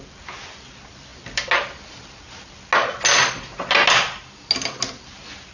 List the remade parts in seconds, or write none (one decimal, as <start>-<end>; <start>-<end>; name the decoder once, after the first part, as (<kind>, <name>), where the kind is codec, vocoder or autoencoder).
none